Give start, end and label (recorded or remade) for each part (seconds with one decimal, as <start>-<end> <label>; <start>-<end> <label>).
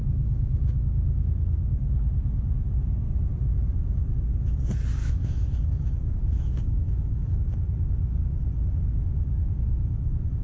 0.0-1.2 remade; 1.2-5.0 recorded; 5.0-7.4 remade; 7.4-10.4 recorded